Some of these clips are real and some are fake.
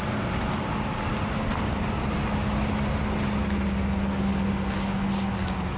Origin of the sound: real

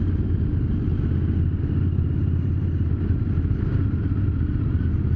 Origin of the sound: real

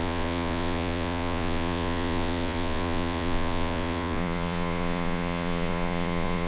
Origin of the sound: fake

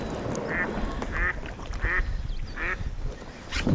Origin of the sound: real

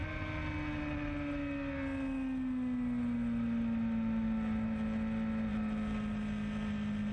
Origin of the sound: real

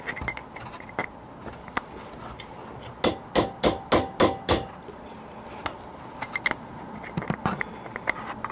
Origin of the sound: real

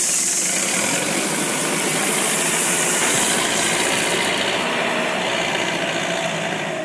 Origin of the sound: real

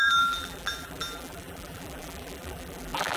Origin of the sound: fake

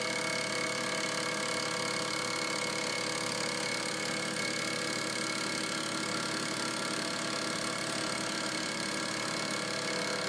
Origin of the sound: real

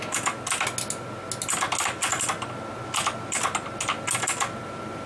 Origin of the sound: real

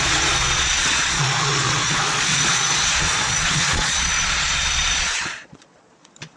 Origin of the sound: fake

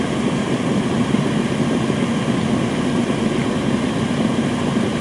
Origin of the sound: real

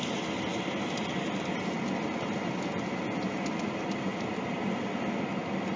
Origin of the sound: real